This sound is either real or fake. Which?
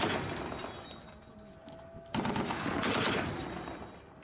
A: real